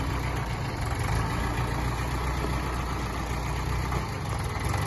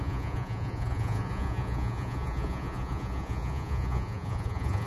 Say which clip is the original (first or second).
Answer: first